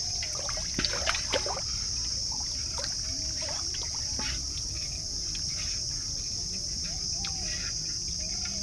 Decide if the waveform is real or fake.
real